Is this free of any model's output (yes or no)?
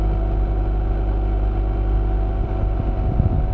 yes